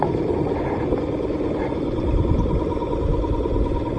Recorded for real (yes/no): yes